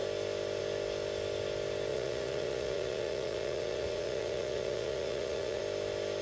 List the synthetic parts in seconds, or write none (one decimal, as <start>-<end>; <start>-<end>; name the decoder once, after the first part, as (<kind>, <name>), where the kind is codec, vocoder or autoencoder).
1.9-5.6 (vocoder, Vocos)